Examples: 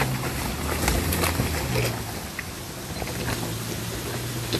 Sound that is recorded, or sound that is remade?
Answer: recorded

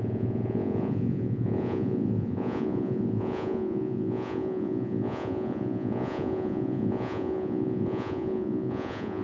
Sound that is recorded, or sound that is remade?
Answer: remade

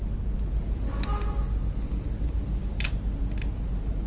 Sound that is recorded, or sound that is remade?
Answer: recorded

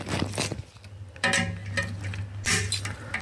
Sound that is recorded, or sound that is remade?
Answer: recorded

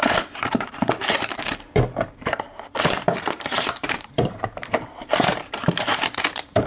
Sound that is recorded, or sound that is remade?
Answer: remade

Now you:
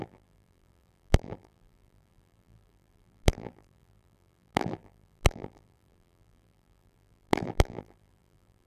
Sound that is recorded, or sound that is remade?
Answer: remade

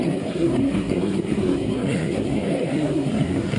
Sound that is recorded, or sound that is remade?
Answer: remade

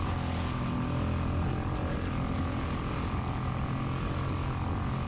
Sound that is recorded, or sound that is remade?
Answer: recorded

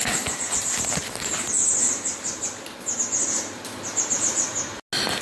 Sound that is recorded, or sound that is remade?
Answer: recorded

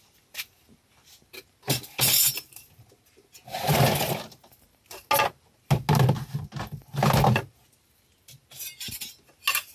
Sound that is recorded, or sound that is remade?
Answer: recorded